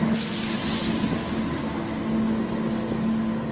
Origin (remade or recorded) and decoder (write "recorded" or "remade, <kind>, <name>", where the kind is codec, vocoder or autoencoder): recorded